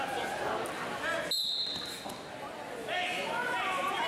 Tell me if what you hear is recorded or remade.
recorded